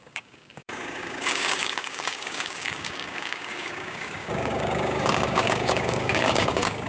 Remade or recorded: remade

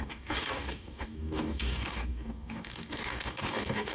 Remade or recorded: remade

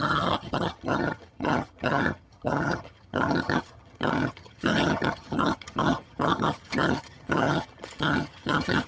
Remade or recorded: remade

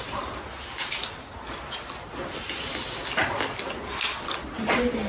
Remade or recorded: recorded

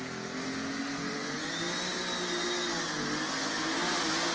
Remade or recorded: recorded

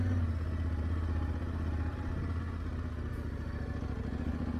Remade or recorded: recorded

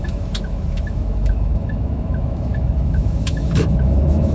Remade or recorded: remade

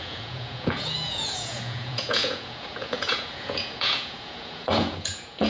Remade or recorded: remade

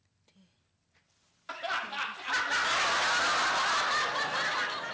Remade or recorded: recorded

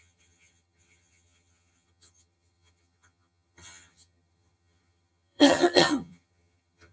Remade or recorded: remade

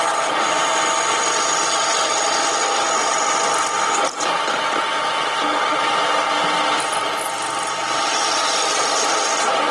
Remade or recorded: recorded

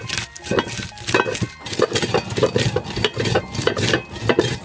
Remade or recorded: recorded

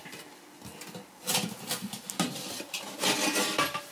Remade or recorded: recorded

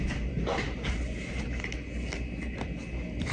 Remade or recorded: remade